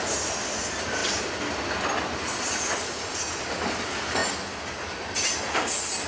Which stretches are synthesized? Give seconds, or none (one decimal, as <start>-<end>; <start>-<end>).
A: none